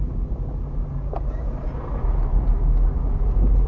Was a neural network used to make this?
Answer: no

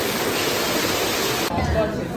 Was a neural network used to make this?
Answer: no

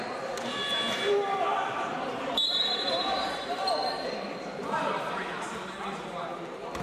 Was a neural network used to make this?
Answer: yes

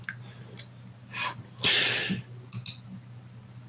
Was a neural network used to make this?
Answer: no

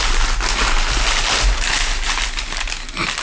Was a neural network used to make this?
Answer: no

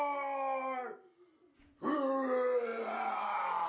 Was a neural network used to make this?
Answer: no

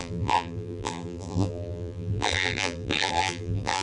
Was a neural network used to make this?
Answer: yes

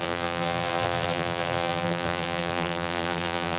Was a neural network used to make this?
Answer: yes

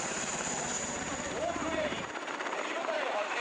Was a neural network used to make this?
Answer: yes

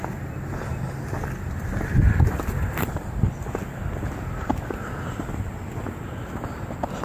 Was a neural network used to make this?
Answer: no